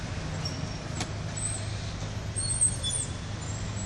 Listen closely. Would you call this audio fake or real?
real